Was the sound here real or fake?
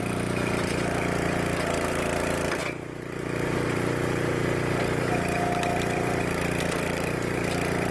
fake